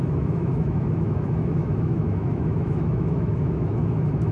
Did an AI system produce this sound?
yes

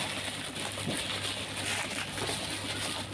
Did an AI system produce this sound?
no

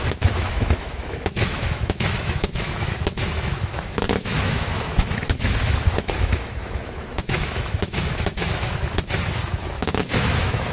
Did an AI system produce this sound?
yes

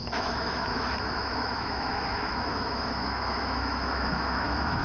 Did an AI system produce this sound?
yes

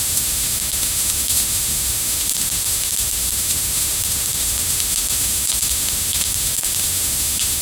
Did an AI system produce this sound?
yes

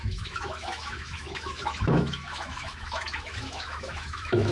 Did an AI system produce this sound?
yes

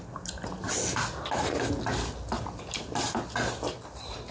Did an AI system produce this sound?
no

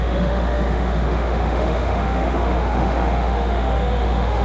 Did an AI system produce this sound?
yes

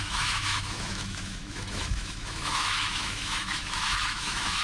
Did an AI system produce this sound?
yes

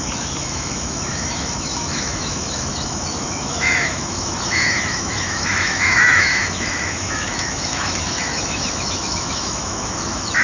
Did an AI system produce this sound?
yes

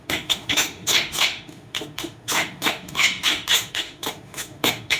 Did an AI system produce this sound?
yes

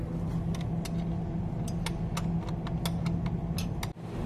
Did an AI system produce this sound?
no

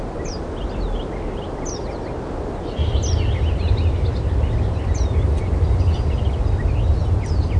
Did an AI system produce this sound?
no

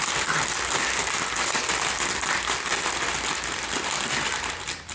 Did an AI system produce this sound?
no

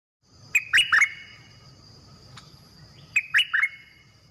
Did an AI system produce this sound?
no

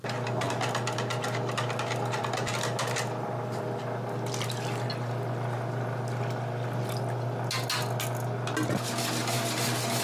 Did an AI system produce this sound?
no